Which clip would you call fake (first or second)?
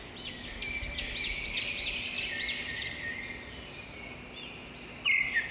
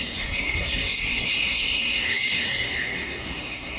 second